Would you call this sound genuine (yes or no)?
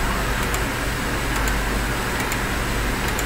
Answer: yes